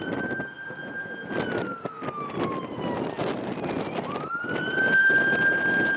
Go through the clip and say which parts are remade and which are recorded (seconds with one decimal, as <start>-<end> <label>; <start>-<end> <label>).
0.0-6.0 recorded